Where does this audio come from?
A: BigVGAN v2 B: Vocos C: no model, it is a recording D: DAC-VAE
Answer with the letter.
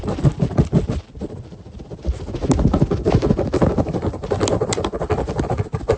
A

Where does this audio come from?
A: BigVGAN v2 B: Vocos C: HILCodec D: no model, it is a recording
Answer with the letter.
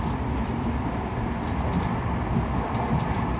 A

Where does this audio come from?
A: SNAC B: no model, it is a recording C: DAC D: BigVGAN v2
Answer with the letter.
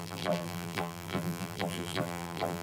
D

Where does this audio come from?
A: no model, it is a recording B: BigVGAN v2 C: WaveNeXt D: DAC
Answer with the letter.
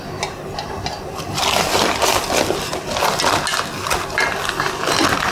A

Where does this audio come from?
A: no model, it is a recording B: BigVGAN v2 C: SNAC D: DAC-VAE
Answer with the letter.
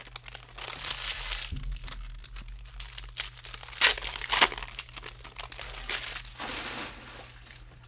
A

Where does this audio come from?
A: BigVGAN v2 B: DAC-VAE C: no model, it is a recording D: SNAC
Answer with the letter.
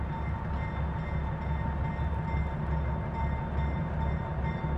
C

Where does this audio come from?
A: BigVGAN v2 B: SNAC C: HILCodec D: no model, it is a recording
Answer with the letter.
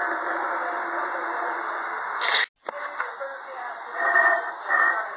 D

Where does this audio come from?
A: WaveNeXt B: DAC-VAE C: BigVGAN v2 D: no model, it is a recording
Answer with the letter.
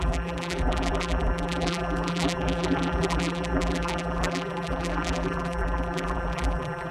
C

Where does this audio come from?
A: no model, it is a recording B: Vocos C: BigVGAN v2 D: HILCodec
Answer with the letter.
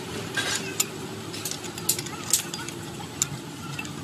A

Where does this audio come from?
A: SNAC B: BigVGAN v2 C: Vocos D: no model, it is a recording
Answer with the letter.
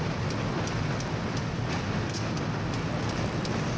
D